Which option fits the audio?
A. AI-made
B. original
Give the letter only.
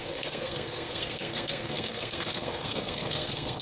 A